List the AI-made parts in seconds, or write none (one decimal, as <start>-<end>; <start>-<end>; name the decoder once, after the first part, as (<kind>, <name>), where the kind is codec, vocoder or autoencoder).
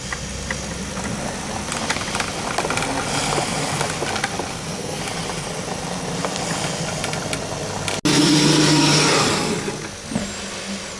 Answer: 4.5-5.0 (codec, SNAC)